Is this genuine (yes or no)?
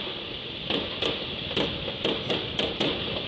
yes